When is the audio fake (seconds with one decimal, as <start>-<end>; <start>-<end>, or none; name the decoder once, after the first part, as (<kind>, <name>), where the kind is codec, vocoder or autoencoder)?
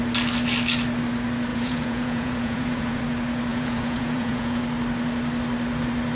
1.5-3.0 (vocoder, Vocos); 3.5-4.6